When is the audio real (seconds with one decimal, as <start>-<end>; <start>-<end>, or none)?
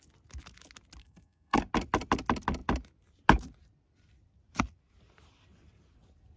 0.0-1.0; 1.6-6.4